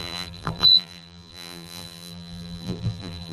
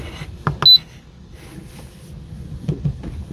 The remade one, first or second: first